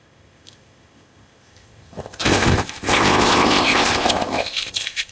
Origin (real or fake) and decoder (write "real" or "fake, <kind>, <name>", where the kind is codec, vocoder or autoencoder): fake, codec, ZipCodec